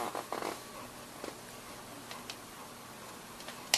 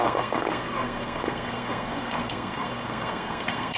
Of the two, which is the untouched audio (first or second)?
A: first